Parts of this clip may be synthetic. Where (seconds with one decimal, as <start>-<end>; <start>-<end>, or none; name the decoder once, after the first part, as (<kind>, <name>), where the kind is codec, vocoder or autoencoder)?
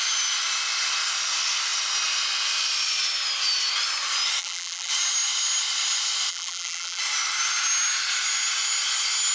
4.4-4.9 (vocoder, BigVGAN v2); 6.3-7.0